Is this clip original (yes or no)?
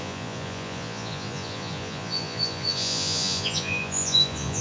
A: no